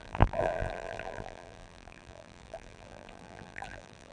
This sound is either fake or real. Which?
fake